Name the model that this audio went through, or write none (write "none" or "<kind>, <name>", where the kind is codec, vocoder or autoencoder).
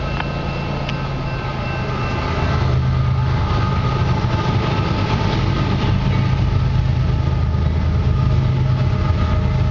none